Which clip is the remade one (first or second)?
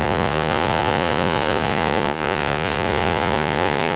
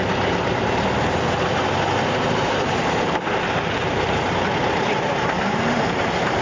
first